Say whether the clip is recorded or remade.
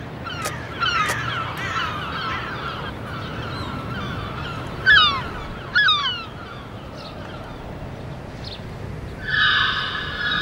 recorded